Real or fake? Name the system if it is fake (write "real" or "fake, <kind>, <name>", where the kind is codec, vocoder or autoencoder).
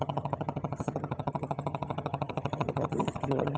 fake, vocoder, HiFi-GAN